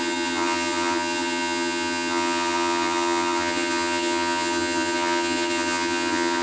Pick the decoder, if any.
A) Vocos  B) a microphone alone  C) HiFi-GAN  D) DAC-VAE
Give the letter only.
C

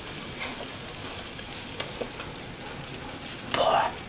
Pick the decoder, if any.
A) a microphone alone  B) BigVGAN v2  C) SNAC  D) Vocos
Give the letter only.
A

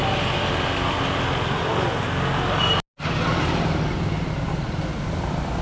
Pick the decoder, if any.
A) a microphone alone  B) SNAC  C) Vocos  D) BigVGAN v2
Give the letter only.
A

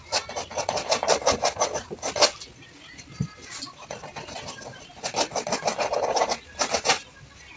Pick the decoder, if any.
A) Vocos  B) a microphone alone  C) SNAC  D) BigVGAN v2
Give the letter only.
B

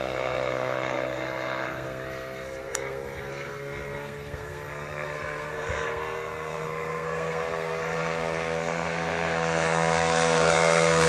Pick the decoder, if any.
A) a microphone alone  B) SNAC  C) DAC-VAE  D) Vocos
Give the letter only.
B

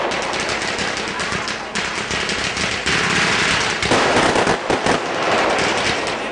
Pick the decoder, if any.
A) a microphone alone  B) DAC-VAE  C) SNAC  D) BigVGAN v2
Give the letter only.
A